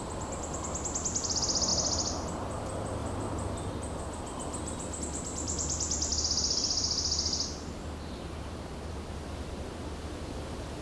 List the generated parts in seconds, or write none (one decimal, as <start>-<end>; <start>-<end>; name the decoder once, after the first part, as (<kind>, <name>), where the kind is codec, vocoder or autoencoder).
none